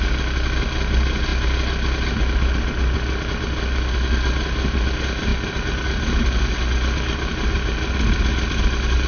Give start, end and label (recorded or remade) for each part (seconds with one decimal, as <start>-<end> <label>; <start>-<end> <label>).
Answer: 0.0-9.1 recorded